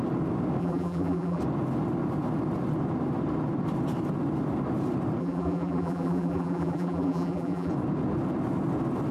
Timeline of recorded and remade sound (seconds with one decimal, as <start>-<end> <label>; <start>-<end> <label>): 0.0-0.6 recorded; 0.6-1.4 remade; 1.4-5.2 recorded; 5.2-7.7 remade; 7.7-9.1 recorded